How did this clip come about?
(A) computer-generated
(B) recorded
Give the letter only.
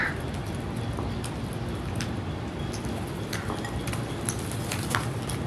B